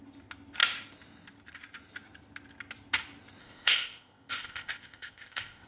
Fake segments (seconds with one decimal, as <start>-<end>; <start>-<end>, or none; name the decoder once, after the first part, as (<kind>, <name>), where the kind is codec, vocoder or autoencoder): 3.4-5.7 (codec, ZipCodec)